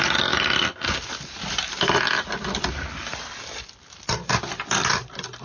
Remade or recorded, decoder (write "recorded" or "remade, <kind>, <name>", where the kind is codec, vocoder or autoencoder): recorded